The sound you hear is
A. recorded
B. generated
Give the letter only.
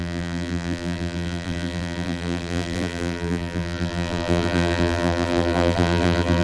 B